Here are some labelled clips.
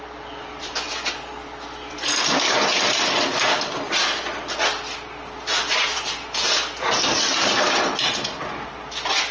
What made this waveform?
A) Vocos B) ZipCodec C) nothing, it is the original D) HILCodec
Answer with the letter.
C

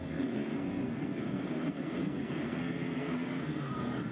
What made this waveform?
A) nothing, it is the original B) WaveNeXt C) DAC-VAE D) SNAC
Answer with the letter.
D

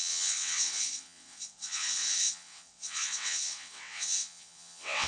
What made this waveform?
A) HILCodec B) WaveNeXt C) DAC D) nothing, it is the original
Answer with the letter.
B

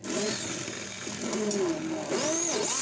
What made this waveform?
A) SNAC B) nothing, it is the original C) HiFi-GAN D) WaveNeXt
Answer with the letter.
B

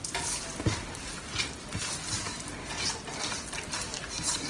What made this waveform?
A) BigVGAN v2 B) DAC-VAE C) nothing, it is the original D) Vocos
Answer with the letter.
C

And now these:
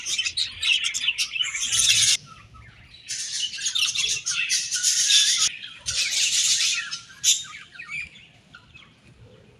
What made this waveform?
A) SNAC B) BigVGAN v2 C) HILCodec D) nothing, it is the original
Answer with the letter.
B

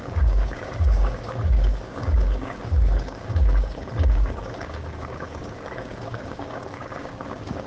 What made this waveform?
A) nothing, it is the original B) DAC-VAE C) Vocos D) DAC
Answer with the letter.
D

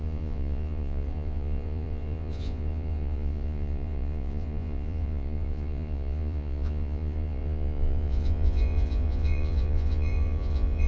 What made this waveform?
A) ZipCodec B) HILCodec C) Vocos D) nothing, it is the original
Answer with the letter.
C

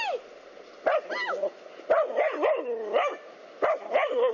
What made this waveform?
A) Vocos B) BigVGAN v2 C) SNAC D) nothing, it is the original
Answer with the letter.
D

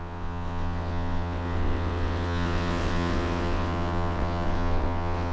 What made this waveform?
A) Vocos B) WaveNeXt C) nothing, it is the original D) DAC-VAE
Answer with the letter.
B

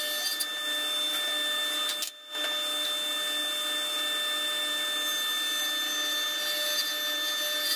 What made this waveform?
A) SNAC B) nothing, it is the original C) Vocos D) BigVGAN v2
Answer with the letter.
B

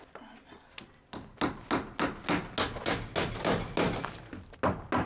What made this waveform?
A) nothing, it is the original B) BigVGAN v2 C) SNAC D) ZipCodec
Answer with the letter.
A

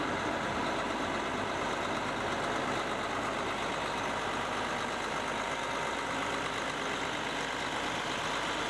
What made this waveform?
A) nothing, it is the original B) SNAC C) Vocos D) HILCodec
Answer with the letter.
A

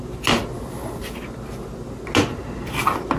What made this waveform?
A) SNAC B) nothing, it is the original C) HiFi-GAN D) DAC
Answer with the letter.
B